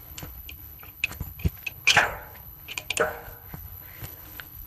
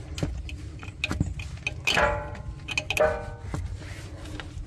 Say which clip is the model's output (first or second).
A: first